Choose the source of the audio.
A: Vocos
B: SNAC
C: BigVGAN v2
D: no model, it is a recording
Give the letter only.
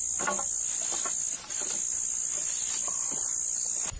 D